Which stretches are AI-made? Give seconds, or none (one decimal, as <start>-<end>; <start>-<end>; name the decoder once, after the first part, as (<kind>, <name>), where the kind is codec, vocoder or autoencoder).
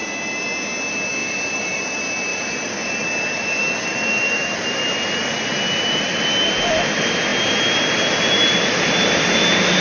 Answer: 1.2-1.8 (vocoder, BigVGAN v2); 2.3-3.6